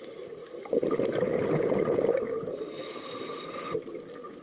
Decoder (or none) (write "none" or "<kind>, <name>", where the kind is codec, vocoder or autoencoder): none